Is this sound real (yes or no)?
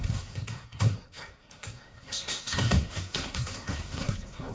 no